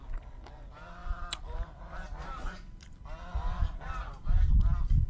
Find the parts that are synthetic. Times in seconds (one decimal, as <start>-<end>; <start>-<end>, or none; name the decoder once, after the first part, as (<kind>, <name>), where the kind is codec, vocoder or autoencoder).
none